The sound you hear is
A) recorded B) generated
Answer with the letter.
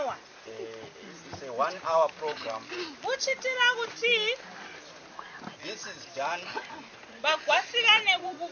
A